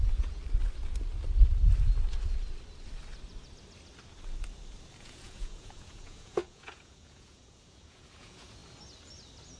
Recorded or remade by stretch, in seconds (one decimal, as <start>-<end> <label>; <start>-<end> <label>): 0.0-0.4 remade; 0.4-5.0 recorded; 5.0-8.6 remade; 8.6-9.6 recorded